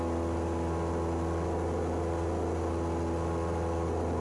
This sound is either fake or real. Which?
real